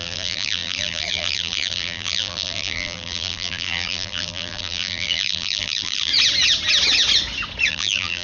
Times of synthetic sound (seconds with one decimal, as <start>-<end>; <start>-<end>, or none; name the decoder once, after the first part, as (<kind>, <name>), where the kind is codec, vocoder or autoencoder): 0.0-6.1 (vocoder, BigVGAN v2); 7.7-8.2